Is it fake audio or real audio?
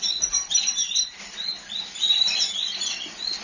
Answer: fake